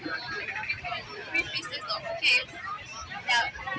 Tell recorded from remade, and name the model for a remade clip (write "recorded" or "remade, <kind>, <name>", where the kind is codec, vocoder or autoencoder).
recorded